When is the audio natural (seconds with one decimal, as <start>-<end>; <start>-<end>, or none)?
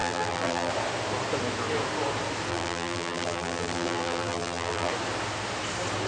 0.7-2.5; 4.9-6.1